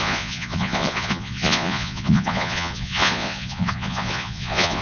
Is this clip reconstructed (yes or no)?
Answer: yes